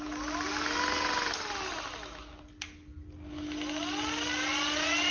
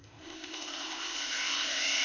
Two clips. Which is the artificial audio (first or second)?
second